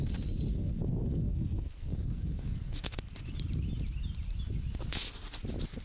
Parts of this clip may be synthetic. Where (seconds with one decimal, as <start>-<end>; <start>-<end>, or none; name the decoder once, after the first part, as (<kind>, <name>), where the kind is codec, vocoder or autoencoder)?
0.5-3.0 (codec, SNAC)